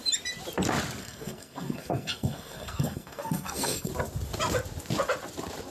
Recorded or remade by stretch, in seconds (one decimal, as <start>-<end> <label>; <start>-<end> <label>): 0.0-1.0 recorded; 1.0-3.9 remade; 3.9-5.7 recorded